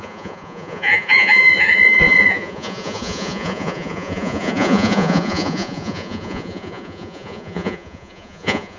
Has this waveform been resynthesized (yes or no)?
yes